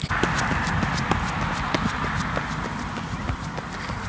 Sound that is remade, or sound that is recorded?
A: recorded